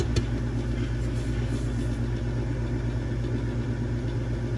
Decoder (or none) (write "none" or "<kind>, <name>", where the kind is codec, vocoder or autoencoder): none